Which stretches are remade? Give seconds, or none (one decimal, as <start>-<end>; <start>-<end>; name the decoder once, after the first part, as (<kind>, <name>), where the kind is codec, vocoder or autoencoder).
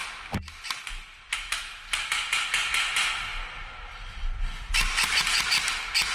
none